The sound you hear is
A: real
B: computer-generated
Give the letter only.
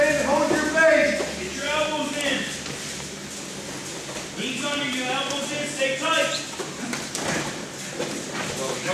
A